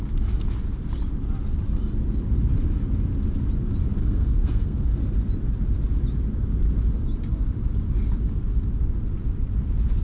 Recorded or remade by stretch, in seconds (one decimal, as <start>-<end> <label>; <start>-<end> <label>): 0.0-4.0 recorded; 4.0-5.0 remade; 5.0-10.0 recorded

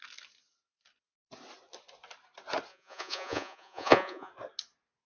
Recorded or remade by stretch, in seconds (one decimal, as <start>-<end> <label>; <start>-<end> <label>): 0.0-2.7 recorded; 2.7-4.3 remade; 4.3-5.1 recorded

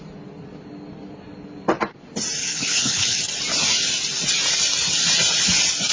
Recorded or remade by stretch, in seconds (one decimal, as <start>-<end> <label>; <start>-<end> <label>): 0.0-2.4 recorded; 2.4-3.2 remade; 3.2-5.9 recorded

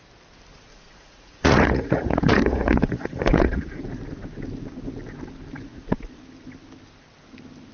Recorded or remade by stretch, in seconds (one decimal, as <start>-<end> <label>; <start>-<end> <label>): 0.0-0.7 recorded; 0.7-3.8 remade; 3.8-5.6 recorded; 5.6-6.2 remade; 6.2-7.7 recorded

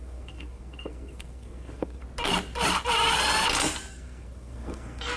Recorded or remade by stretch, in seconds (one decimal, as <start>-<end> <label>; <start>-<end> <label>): 0.0-2.0 remade; 2.0-3.9 recorded; 3.9-5.2 remade

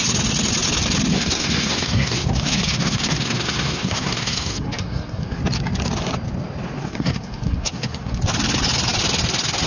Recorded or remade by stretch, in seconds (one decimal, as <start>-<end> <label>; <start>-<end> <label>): 0.0-1.1 recorded; 1.1-5.4 remade; 5.4-6.8 recorded; 6.8-8.2 remade; 8.2-9.7 recorded